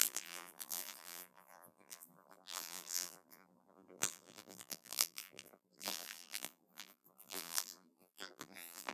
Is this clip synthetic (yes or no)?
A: yes